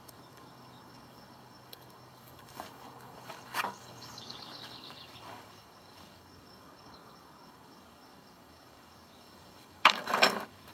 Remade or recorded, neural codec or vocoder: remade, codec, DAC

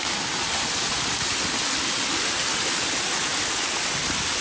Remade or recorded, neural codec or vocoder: recorded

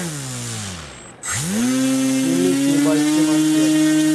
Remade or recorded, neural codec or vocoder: recorded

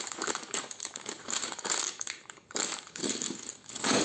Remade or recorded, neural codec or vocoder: remade, codec, DAC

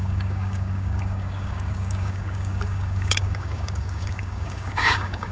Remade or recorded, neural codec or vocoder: remade, codec, DAC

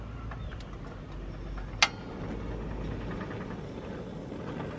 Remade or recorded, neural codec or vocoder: recorded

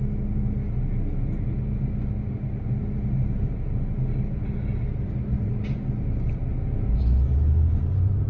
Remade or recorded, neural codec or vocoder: recorded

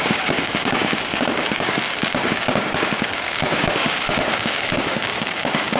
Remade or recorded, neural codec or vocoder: remade, codec, DAC